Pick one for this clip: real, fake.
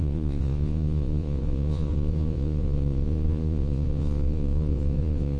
fake